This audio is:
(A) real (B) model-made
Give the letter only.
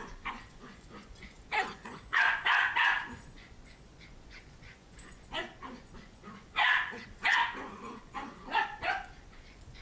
B